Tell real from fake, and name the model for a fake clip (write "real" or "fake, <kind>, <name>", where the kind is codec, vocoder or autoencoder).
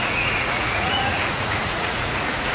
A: fake, vocoder, Vocos